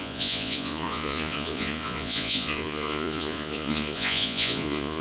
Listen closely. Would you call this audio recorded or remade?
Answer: remade